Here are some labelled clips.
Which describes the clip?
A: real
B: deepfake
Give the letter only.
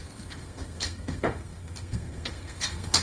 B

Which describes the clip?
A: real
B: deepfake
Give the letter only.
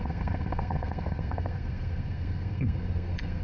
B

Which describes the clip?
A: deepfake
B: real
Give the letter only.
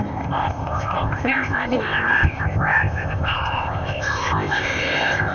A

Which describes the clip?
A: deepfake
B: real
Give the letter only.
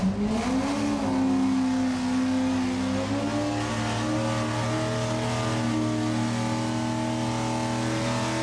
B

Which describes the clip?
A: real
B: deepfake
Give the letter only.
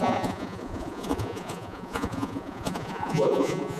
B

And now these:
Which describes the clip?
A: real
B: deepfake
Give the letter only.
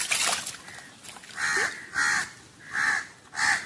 A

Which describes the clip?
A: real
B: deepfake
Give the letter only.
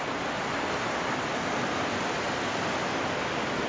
A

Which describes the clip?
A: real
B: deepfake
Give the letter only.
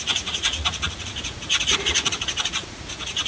B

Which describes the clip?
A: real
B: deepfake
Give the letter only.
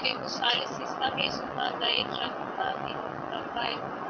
B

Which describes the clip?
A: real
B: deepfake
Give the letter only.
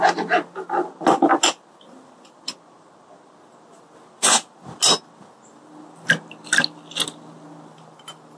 A